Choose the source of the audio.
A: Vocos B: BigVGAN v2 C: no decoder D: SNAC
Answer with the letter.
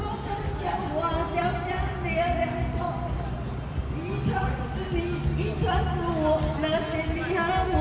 C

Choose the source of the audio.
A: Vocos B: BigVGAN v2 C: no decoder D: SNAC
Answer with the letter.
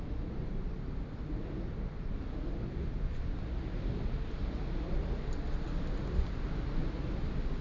C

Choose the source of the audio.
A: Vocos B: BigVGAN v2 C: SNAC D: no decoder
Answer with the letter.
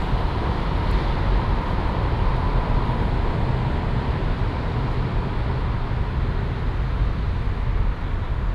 D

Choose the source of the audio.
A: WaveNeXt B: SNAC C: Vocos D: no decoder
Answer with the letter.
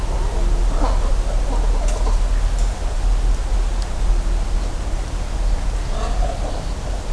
D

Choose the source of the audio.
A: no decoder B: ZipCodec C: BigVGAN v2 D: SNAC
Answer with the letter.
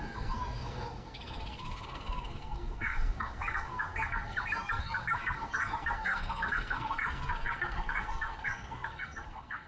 D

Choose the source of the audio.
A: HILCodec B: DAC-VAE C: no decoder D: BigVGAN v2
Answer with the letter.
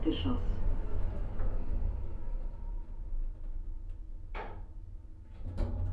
C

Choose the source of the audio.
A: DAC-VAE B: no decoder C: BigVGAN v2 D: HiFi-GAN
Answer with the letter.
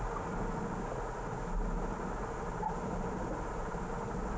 B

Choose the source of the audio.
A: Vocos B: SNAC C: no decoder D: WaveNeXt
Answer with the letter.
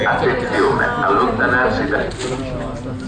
C